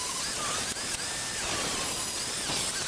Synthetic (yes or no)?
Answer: no